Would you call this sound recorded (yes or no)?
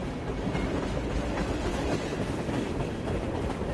yes